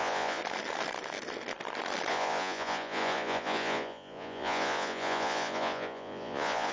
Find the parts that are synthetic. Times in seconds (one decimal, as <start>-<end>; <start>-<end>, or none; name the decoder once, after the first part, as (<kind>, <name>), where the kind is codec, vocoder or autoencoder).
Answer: 0.0-0.4 (vocoder, Vocos); 2.1-6.7